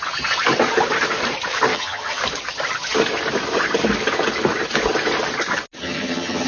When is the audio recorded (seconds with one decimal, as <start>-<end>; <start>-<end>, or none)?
0.0-1.7; 2.2-5.8